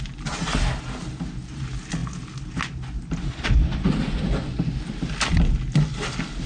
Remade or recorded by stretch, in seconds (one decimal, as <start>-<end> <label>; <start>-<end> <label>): 0.0-6.5 recorded